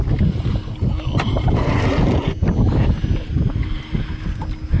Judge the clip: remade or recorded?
recorded